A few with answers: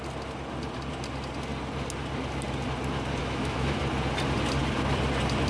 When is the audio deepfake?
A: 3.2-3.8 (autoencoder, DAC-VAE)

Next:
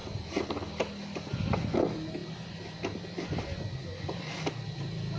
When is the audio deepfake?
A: none

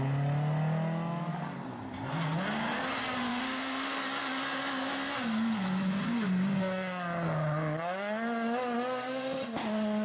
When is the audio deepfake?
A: 3.3-4.0 (autoencoder, DAC-VAE)

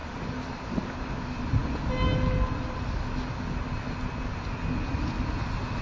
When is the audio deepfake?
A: none

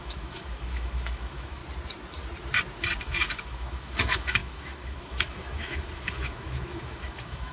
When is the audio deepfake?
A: 0.0-1.6 (autoencoder, DAC-VAE); 3.0-7.5